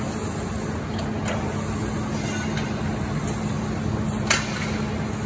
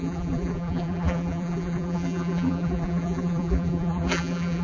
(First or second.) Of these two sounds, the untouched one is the first